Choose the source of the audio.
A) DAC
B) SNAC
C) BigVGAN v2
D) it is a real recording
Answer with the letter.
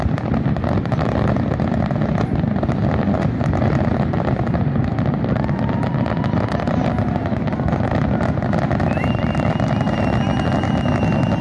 C